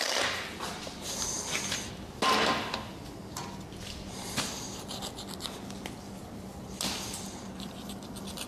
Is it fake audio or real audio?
fake